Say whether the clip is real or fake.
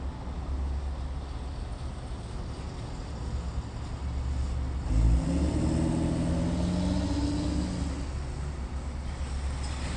real